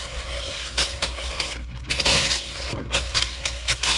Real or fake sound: fake